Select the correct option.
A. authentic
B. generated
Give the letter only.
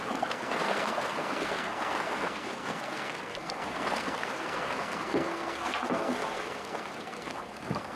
B